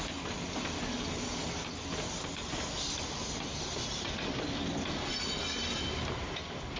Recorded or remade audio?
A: recorded